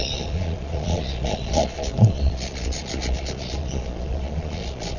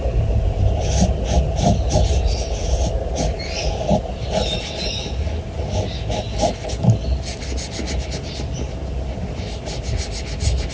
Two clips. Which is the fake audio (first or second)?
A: first